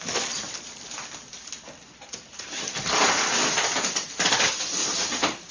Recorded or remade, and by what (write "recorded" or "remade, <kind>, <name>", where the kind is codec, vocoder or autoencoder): recorded